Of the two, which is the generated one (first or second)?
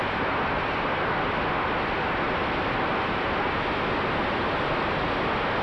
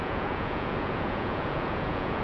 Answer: second